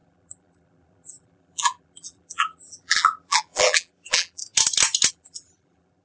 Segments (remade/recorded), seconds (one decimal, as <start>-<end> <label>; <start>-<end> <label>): 0.0-4.4 remade; 4.4-5.1 recorded; 5.1-6.0 remade